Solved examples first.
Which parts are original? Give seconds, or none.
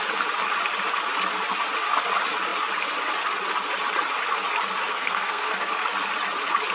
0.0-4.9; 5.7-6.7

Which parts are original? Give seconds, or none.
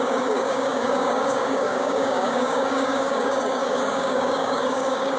none